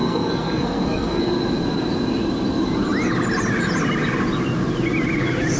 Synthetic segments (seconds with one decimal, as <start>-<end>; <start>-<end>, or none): 0.0-1.2

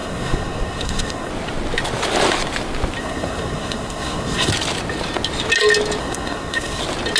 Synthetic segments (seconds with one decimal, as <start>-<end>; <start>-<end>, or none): 0.0-1.3; 3.0-4.5; 6.0-6.8

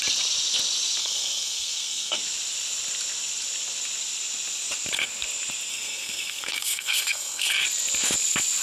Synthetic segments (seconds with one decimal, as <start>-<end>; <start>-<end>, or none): 1.0-2.2; 5.7-7.5

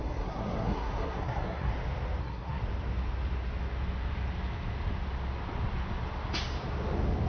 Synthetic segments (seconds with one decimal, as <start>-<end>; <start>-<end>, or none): 0.0-1.7; 2.2-2.6

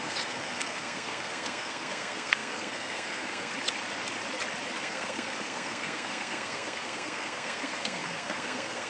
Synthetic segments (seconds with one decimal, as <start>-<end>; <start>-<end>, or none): 0.0-3.5; 4.8-8.9

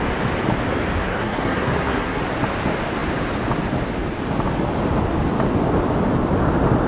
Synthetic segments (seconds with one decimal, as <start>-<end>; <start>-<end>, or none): 1.0-2.2

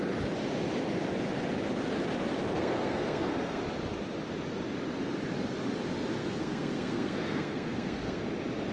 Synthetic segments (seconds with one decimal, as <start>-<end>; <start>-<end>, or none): 2.6-3.6; 6.2-8.2

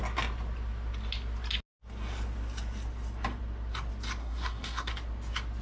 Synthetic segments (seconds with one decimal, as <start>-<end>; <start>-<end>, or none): 4.2-4.9